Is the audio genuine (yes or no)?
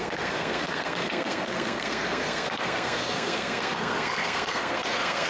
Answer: no